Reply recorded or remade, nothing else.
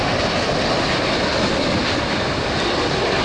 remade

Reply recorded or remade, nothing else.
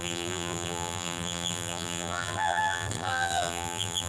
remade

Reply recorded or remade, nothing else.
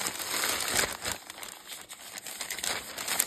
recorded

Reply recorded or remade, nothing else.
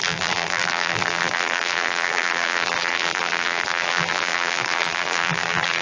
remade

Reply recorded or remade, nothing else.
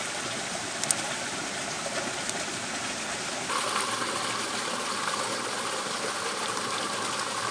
recorded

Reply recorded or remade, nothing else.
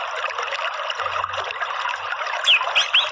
recorded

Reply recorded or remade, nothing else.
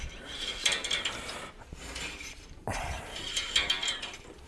remade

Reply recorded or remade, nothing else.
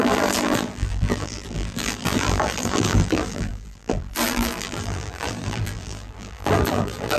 remade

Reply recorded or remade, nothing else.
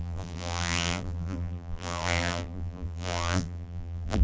remade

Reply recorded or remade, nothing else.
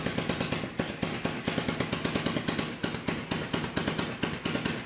recorded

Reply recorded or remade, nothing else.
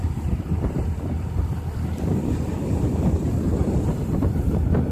remade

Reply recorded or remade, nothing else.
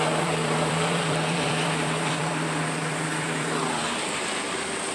remade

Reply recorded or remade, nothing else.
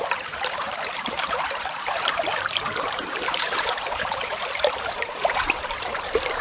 remade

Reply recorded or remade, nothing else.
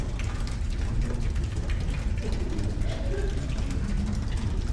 recorded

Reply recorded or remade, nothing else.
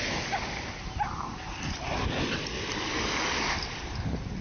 recorded